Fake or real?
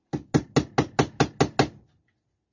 real